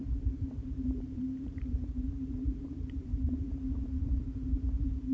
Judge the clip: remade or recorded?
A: remade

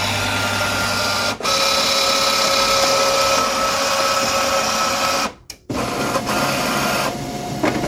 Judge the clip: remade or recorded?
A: recorded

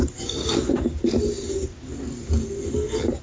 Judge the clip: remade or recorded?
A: recorded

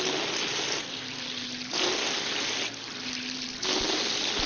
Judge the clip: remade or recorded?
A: recorded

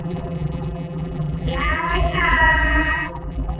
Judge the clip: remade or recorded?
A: remade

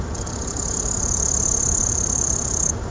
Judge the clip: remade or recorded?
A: remade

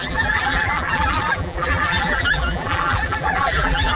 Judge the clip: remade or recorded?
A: remade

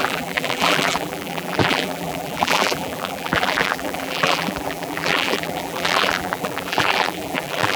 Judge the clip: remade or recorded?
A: remade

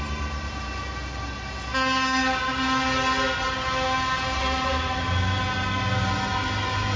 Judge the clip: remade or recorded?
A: recorded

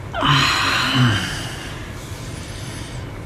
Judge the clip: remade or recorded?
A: recorded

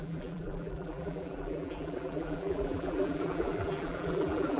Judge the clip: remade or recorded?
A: remade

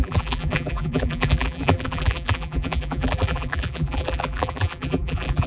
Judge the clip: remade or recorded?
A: remade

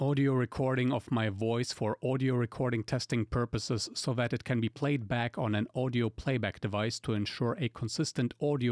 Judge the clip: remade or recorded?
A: recorded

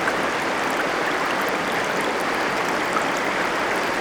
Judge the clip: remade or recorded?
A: remade